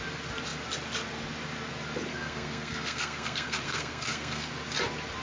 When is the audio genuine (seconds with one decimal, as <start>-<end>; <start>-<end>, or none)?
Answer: 0.0-2.1; 4.5-5.2